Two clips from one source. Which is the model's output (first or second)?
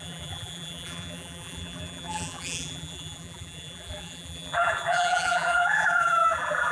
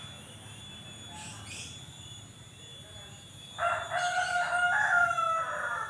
first